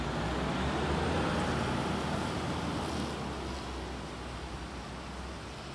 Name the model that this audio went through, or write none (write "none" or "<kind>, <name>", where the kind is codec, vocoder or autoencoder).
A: none